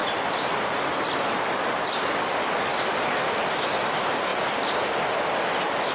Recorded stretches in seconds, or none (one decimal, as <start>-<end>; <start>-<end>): 0.0-5.9